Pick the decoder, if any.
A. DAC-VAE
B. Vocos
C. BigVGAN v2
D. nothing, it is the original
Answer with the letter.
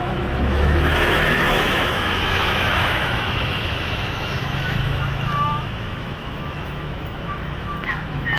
A